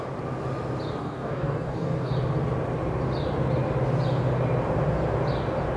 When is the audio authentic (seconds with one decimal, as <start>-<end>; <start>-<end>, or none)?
0.0-1.0; 2.1-5.8